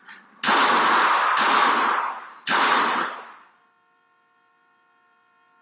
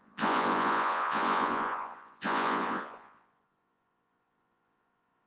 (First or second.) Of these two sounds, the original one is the first